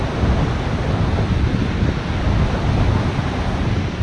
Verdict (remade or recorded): recorded